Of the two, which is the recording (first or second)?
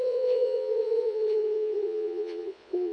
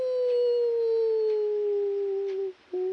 second